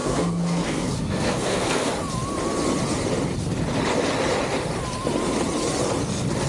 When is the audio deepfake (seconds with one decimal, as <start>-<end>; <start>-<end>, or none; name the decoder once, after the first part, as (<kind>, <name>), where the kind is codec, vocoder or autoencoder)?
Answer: 0.0-1.9 (codec, SNAC)